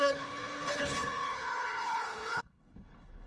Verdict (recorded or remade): remade